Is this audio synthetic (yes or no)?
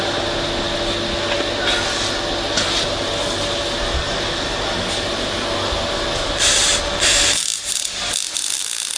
no